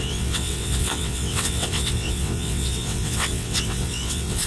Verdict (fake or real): fake